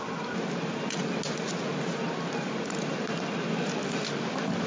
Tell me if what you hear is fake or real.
real